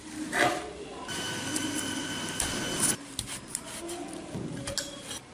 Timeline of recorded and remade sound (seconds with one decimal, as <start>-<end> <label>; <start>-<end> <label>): 0.0-5.3 recorded